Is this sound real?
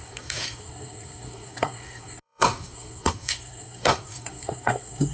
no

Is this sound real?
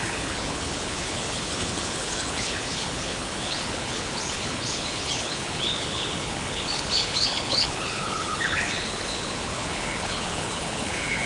no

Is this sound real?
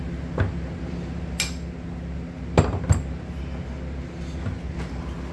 yes